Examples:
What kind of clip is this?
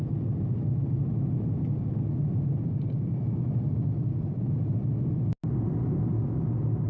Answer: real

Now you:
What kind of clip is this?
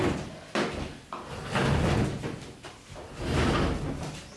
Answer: real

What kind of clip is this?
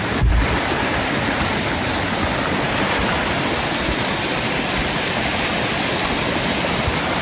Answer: real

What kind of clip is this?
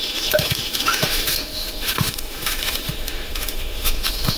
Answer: fake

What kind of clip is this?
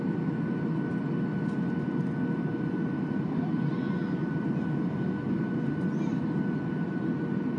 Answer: real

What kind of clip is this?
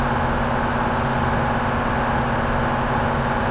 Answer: real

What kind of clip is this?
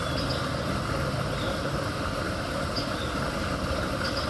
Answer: real